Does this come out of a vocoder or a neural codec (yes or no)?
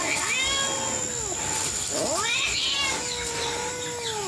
no